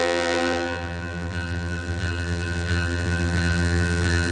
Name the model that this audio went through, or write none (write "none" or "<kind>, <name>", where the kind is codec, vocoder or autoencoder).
vocoder, BigVGAN v2